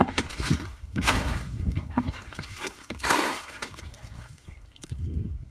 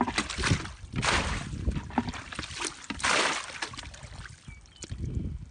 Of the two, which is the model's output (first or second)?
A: first